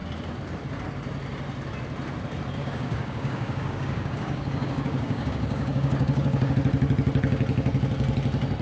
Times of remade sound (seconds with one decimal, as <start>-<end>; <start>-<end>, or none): 2.6-6.5